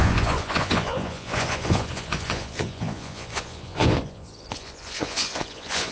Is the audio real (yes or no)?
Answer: no